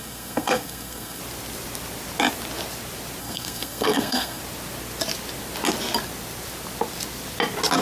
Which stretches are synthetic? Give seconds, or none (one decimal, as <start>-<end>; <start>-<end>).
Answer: 0.0-1.2; 3.2-4.4

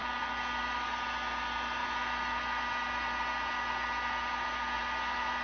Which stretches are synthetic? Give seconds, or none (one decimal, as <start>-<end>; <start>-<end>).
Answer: none

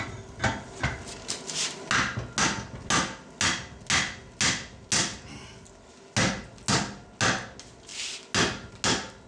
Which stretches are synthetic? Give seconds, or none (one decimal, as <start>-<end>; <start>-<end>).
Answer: none

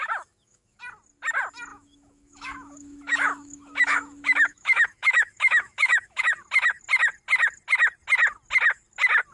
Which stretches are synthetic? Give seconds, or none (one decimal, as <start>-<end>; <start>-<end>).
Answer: 0.0-0.8; 1.7-6.2

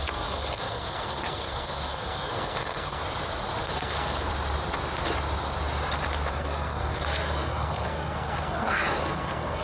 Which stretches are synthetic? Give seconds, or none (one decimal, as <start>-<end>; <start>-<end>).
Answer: 0.0-3.0; 3.6-4.3; 6.3-9.6

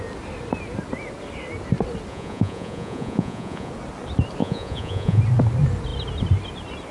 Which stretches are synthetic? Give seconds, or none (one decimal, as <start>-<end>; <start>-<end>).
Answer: 2.1-3.7; 4.4-5.2

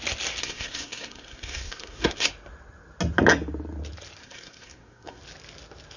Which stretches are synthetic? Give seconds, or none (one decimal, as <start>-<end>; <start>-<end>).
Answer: 0.4-2.3; 4.2-5.2